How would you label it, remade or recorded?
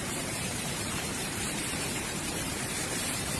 remade